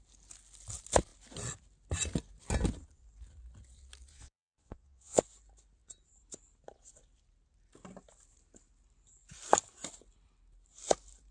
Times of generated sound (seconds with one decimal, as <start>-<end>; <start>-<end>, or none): 4.1-5.2